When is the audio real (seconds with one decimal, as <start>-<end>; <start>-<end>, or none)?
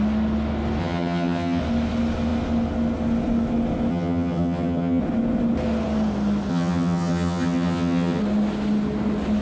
0.0-0.8; 1.6-3.9; 5.0-6.5; 8.2-9.4